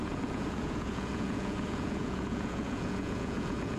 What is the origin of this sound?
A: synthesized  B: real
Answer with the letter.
A